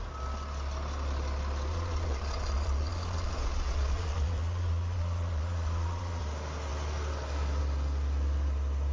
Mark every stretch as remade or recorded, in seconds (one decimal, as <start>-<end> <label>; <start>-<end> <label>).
0.0-1.7 recorded; 1.7-6.2 remade; 6.2-8.9 recorded